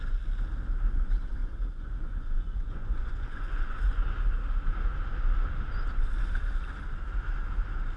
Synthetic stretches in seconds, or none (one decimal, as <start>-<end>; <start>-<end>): 1.4-3.8